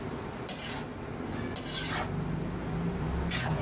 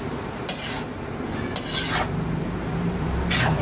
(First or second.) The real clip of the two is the first